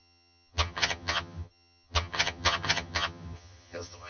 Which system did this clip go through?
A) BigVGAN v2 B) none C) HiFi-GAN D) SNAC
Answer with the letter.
C